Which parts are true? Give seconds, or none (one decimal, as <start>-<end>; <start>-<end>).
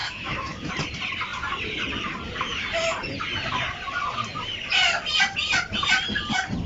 0.7-6.7